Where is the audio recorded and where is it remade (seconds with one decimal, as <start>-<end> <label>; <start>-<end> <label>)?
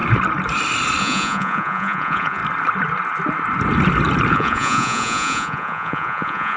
0.0-1.0 recorded; 1.0-2.4 remade; 2.4-4.3 recorded; 4.3-6.6 remade